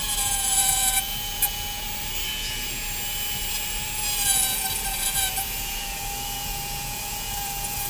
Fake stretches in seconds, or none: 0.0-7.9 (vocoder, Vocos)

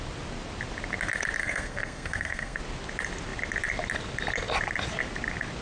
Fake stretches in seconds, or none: 1.4-2.6 (codec, SNAC)